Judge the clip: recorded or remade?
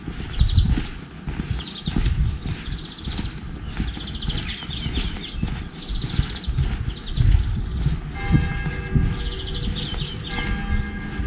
recorded